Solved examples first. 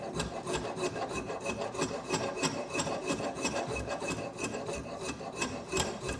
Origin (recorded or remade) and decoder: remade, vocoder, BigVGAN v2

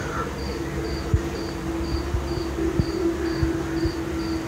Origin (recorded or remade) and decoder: recorded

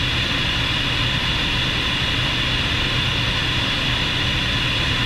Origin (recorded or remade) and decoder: recorded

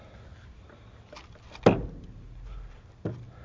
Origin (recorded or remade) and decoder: recorded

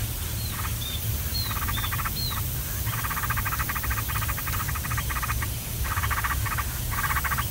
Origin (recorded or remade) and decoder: remade, vocoder, BigVGAN v2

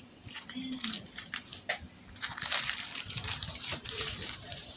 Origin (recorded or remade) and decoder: remade, vocoder, BigVGAN v2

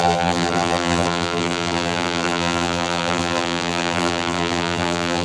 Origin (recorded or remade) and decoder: remade, vocoder, BigVGAN v2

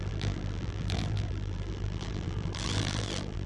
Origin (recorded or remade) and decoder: remade, vocoder, BigVGAN v2